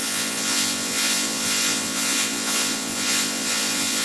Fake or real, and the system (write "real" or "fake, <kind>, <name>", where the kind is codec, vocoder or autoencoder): fake, vocoder, Vocos